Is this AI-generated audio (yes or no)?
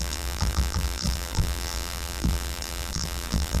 yes